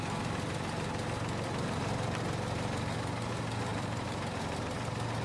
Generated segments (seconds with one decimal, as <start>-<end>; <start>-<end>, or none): 3.7-4.8